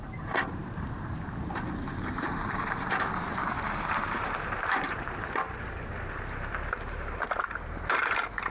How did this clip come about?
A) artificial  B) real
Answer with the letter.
A